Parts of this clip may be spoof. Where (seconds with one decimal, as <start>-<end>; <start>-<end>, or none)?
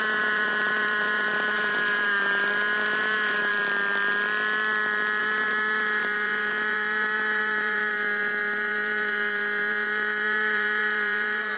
0.0-3.5; 5.2-11.6